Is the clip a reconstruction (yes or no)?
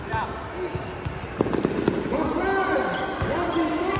no